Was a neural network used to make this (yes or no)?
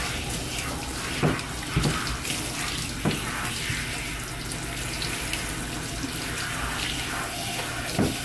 no